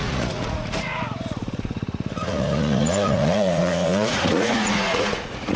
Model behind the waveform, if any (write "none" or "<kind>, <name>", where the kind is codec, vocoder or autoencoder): vocoder, Vocos